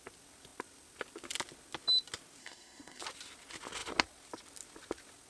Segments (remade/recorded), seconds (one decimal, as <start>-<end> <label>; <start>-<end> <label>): 0.0-2.4 recorded; 2.4-3.0 remade; 3.0-5.3 recorded